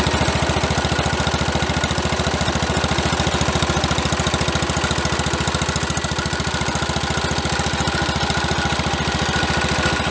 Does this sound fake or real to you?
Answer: real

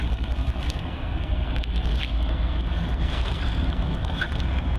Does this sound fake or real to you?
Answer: fake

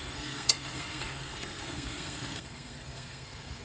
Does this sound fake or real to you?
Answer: fake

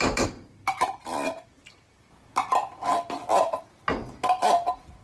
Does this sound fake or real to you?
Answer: real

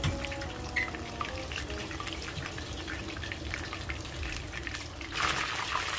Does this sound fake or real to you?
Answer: real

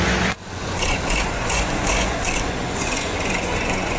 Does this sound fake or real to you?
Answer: fake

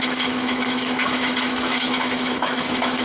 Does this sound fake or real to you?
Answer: fake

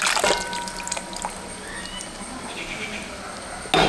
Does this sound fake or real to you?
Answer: real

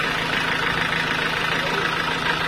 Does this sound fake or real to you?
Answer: real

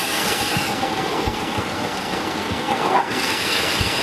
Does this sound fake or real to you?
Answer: fake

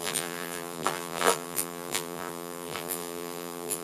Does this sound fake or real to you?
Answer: fake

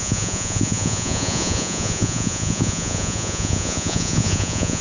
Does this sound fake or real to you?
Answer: fake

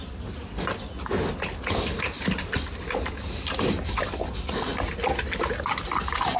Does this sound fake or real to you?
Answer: real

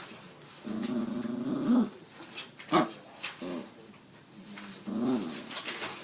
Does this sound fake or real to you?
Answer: real